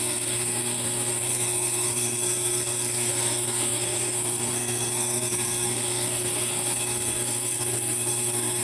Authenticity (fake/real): fake